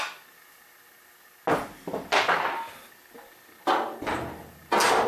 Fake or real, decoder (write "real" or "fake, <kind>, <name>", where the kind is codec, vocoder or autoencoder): real